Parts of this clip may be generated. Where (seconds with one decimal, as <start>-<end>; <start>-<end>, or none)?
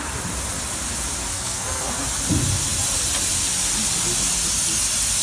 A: 1.3-1.9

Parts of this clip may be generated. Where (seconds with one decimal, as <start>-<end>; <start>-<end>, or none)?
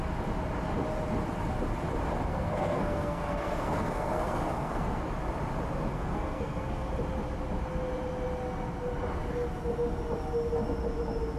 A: 2.3-5.0; 5.9-6.9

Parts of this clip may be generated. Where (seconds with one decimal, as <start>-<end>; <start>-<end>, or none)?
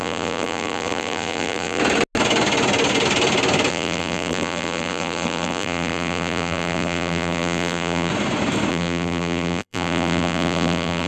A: 0.0-1.8; 3.7-8.1; 8.7-11.1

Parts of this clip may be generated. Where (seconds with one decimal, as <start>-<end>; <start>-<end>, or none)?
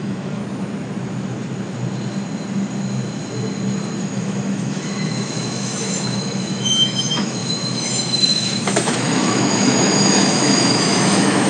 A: 0.0-0.4; 4.0-11.5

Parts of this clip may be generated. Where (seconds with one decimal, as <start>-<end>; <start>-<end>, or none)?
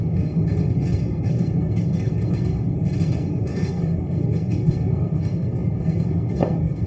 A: 0.0-6.9